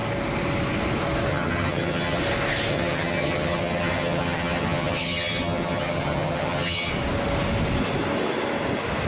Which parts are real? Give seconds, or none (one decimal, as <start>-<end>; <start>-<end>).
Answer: 0.0-1.3; 2.2-2.7; 6.9-9.1